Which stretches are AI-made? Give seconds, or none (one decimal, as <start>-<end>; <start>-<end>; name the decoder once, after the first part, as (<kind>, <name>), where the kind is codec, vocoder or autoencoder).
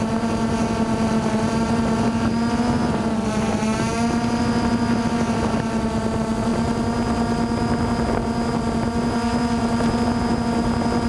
none